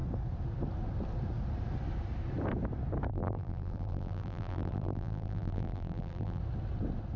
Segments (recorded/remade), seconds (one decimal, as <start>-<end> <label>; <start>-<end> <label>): 0.0-3.1 recorded; 3.1-6.4 remade; 6.4-7.2 recorded